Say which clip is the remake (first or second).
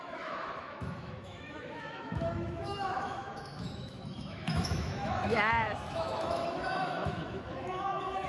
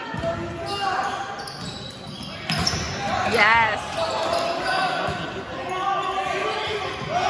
first